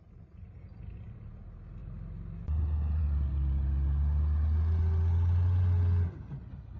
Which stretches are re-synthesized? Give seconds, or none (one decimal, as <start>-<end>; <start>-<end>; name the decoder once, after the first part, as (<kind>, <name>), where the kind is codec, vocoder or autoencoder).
none